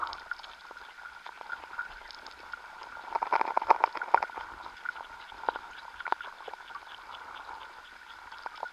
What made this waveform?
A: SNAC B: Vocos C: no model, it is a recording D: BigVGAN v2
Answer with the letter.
C